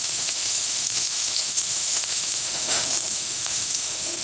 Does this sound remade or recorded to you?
remade